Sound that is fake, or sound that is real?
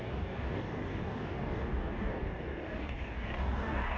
fake